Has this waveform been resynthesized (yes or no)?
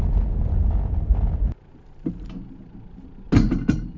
no